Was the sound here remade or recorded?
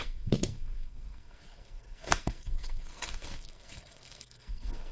remade